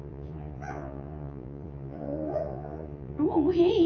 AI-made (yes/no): yes